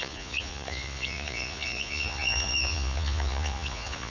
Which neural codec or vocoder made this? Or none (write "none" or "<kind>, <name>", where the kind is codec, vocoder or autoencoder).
vocoder, Vocos